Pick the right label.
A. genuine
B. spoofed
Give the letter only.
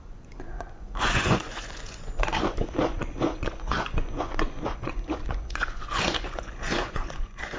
B